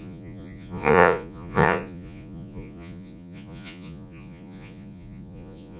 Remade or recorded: remade